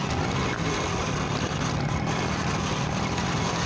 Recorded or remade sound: recorded